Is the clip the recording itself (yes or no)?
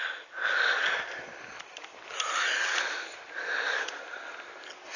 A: yes